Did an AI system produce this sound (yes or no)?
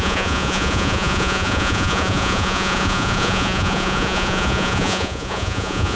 yes